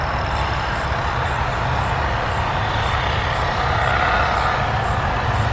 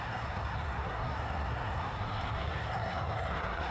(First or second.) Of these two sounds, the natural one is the first